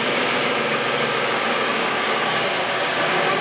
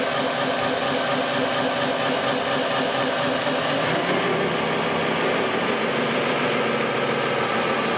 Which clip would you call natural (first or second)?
second